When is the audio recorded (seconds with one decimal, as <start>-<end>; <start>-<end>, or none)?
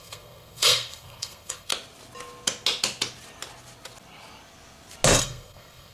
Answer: 1.7-5.2